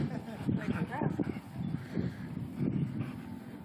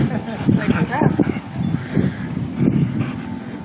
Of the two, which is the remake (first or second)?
first